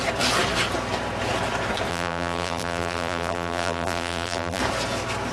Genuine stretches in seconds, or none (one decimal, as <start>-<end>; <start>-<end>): 0.0-1.9; 4.6-5.3